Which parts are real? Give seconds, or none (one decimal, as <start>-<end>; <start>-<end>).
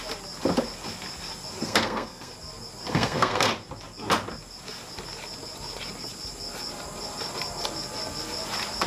0.0-1.6; 2.3-2.9; 3.5-8.9